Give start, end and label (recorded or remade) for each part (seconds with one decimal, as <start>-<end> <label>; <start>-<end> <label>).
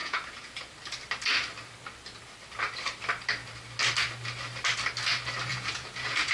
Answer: 0.0-0.7 remade; 0.7-5.5 recorded; 5.5-6.3 remade